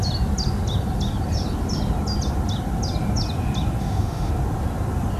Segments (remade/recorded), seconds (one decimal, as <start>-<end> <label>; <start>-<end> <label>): 0.0-3.8 recorded; 3.8-4.3 remade; 4.3-5.2 recorded